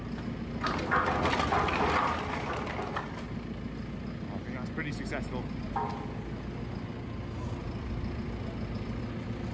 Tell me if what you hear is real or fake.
real